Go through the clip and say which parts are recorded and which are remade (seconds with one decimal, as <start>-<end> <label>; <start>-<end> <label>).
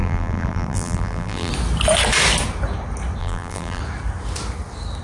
0.0-1.5 remade; 1.5-3.2 recorded; 3.2-3.8 remade; 3.8-5.0 recorded